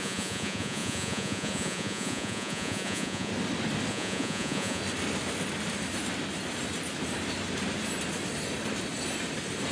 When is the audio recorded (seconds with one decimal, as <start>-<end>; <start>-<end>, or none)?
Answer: 3.3-3.9; 4.8-9.7